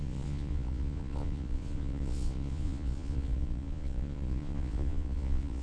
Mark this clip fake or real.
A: fake